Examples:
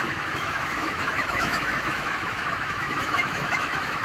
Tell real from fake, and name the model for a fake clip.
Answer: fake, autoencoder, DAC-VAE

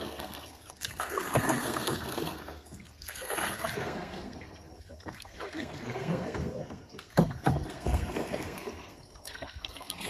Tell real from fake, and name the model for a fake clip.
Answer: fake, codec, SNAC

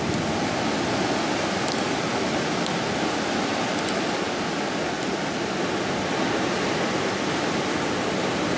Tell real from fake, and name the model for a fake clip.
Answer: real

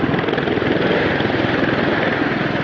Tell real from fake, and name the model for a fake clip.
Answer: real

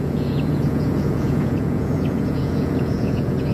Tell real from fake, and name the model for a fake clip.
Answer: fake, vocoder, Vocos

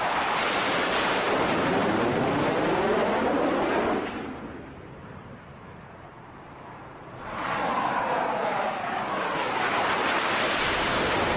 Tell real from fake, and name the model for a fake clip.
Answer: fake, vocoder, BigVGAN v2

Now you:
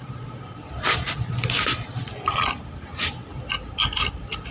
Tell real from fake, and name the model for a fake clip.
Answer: real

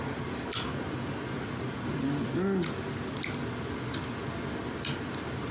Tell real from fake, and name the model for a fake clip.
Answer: real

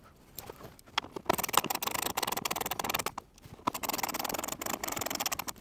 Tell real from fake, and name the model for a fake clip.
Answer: real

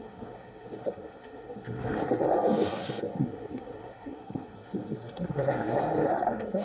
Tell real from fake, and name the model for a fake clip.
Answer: fake, codec, SNAC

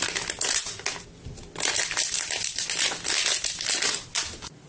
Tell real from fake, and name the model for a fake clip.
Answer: real